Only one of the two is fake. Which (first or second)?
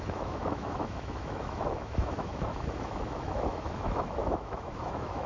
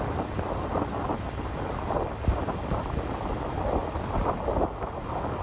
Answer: first